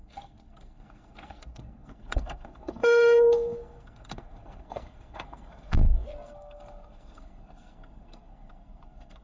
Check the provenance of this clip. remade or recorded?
remade